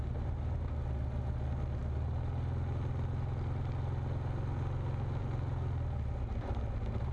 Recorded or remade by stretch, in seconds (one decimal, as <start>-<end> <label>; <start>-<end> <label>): 0.0-7.1 recorded